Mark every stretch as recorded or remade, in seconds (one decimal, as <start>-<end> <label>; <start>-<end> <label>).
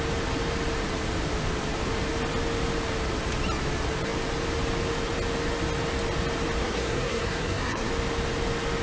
0.0-6.6 recorded; 6.6-7.9 remade; 7.9-8.8 recorded